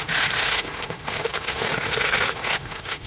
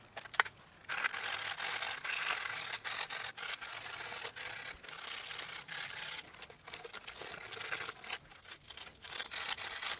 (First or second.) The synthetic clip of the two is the first